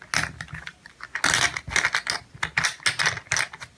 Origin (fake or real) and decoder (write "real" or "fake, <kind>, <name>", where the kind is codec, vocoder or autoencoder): real